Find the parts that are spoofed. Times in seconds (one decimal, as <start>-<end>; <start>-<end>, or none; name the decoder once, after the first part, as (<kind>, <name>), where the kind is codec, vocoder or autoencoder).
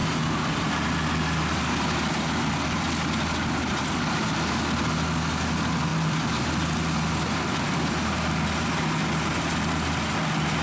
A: 5.9-7.9 (vocoder, BigVGAN v2)